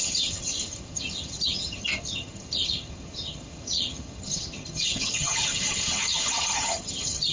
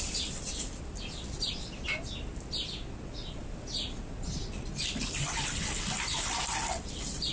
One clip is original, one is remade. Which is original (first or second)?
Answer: second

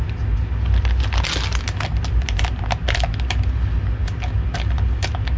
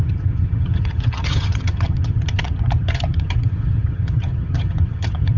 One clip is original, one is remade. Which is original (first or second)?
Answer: first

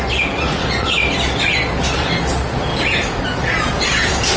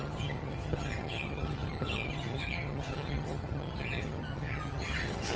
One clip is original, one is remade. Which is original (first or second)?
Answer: first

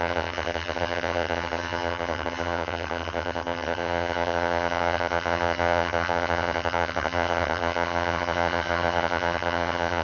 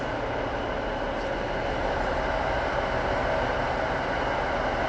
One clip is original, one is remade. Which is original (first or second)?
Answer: second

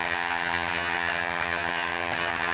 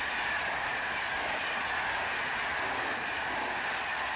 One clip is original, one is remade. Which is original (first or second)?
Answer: second